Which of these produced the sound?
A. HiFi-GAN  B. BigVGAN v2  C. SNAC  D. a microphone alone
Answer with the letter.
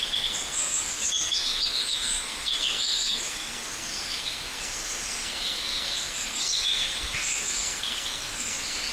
C